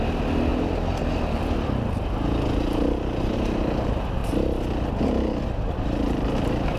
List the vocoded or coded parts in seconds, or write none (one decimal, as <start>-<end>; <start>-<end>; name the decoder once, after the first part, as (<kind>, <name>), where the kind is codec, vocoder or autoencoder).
none